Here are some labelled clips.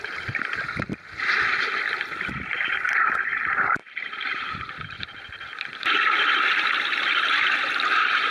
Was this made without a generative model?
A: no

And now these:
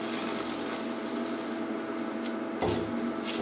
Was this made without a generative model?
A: yes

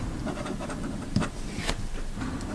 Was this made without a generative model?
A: yes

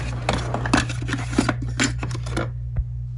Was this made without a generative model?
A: yes